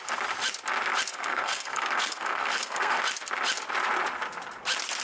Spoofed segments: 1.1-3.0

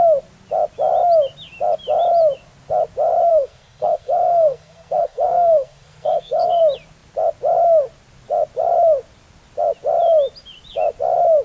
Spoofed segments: 3.3-6.6

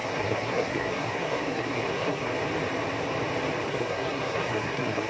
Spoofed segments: 0.0-2.3; 3.7-5.1

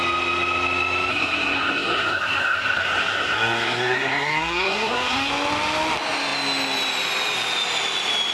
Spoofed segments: 1.1-5.3

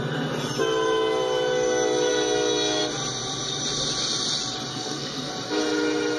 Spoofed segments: 4.7-5.3

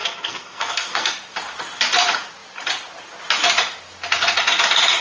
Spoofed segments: 0.0-1.1

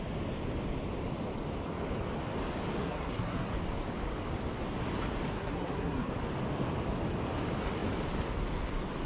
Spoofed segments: 2.8-3.5; 5.3-6.1

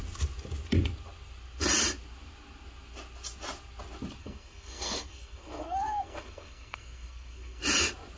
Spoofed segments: 4.2-7.6